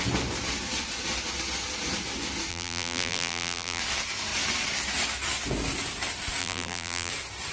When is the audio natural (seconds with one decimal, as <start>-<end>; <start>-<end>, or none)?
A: 0.0-2.5; 3.8-6.4; 7.1-7.5